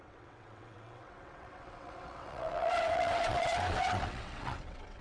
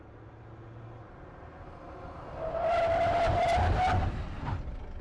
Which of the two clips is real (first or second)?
second